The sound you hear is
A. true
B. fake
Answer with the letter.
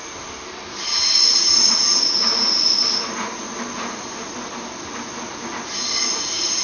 A